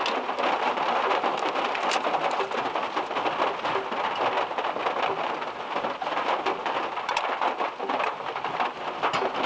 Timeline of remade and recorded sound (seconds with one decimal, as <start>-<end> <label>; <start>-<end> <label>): 0.0-9.5 recorded